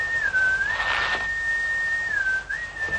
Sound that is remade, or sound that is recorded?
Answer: recorded